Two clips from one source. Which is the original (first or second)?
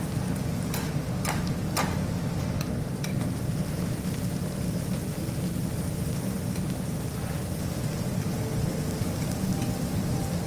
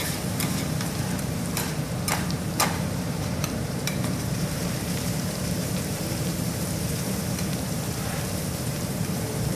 first